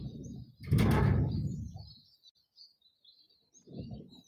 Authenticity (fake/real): real